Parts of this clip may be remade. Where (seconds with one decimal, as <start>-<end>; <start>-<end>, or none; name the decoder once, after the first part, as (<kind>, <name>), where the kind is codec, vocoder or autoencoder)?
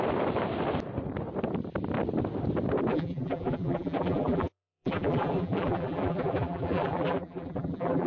2.9-8.1 (vocoder, BigVGAN v2)